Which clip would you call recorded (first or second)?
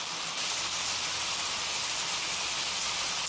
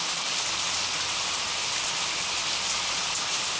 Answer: second